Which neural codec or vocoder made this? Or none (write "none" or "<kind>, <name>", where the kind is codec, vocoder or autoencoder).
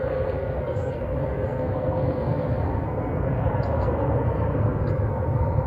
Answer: codec, SNAC